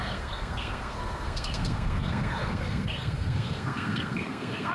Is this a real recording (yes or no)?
no